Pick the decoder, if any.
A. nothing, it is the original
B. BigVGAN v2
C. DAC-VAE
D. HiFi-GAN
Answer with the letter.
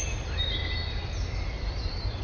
A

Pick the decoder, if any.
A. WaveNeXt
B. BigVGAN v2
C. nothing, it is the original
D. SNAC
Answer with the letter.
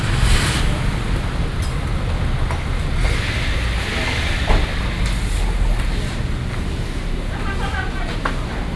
C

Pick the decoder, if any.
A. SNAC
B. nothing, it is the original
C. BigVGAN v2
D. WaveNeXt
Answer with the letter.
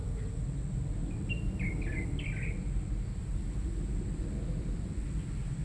B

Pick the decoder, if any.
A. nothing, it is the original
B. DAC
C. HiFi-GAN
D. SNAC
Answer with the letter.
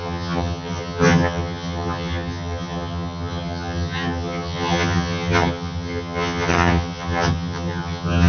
C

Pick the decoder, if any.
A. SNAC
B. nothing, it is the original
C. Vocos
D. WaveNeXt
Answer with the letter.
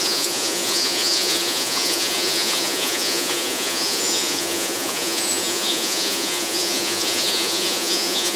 C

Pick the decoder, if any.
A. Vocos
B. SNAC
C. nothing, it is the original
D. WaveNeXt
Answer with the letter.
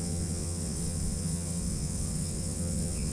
D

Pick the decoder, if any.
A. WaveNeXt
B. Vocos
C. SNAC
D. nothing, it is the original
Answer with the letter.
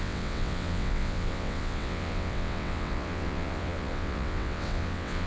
A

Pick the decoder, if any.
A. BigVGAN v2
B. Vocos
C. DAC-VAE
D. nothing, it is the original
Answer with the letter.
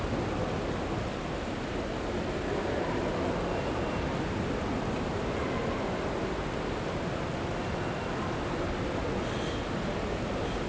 D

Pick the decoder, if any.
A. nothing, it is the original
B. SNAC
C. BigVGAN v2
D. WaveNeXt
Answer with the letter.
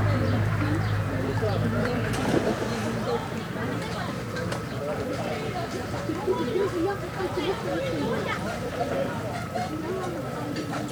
C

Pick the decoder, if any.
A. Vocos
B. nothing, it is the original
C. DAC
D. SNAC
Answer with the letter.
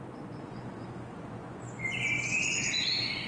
A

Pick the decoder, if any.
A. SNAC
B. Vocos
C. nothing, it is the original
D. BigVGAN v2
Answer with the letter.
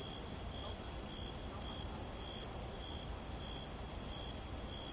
C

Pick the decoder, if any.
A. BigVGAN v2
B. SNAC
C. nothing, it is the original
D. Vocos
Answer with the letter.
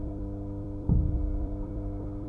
A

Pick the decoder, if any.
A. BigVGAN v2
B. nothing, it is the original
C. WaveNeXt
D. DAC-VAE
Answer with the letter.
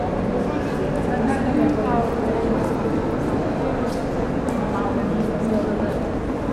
B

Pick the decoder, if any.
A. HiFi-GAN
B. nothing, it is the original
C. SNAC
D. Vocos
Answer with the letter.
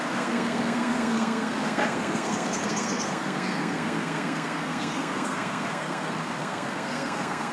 C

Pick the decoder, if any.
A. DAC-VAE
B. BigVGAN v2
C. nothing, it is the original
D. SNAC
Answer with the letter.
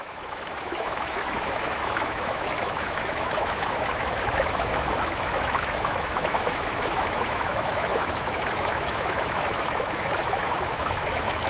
A